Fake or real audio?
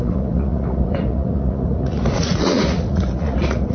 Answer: fake